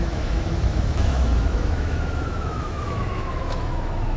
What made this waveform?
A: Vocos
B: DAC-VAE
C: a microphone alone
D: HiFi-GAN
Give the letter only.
B